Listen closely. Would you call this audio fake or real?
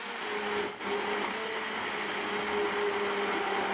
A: real